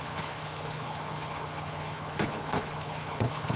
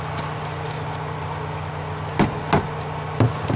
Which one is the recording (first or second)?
second